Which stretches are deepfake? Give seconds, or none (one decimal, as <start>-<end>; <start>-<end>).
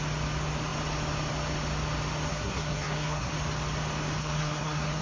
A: 2.3-3.3; 4.2-5.0